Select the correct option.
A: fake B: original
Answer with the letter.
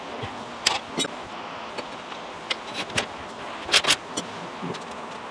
B